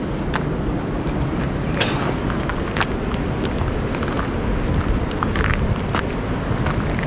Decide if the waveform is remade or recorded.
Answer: recorded